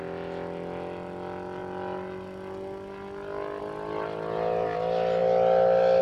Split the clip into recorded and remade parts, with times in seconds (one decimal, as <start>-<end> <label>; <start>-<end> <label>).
0.0-6.0 recorded